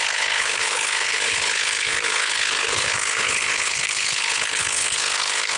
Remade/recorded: remade